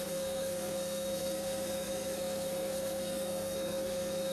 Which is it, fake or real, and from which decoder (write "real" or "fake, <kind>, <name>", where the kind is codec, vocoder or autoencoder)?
fake, codec, SNAC